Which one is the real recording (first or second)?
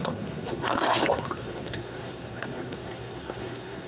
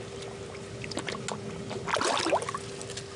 second